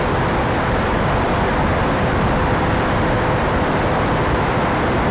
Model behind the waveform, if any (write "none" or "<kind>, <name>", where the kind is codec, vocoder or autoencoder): none